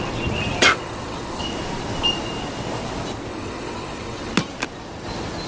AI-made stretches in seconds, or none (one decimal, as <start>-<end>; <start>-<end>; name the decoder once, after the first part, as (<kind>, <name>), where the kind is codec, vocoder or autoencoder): 0.7-1.4 (vocoder, WaveNeXt); 3.3-4.3